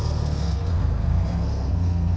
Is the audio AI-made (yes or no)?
yes